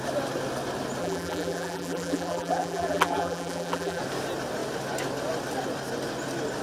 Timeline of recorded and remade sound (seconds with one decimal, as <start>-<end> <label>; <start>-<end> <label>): 0.0-1.0 recorded; 1.0-4.0 remade; 4.0-6.6 recorded